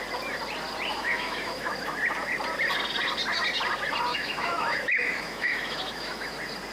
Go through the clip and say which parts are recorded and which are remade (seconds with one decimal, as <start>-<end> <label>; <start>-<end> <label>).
0.0-0.9 recorded; 0.9-1.7 remade; 1.7-4.1 recorded; 4.1-6.3 remade; 6.3-6.7 recorded